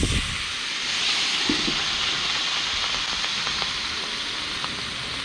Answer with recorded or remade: recorded